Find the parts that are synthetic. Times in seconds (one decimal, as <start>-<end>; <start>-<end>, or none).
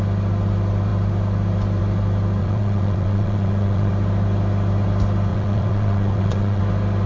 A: 2.4-3.9; 5.3-6.6